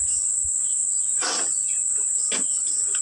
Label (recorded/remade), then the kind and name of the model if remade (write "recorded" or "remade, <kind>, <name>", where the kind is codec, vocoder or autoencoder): recorded